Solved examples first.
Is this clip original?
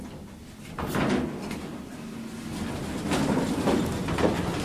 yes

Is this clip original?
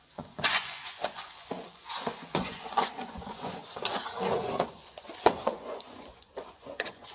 no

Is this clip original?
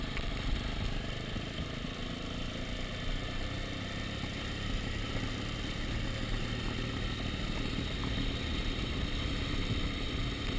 yes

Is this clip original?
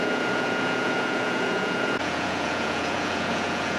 no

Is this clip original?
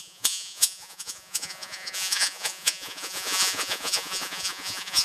no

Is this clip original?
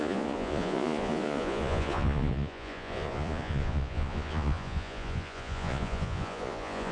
no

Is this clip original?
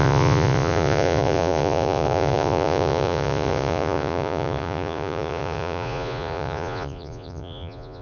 no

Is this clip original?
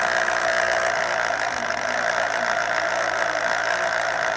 yes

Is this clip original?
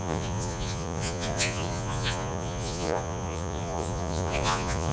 no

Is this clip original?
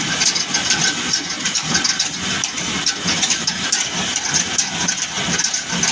yes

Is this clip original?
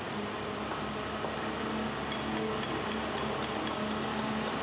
yes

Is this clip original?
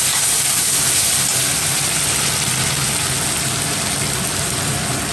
yes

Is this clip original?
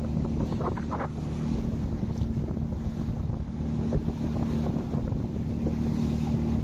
yes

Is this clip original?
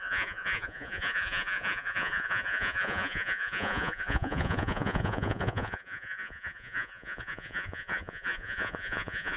no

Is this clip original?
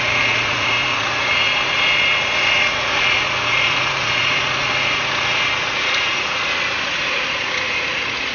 no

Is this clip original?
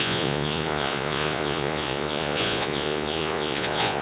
no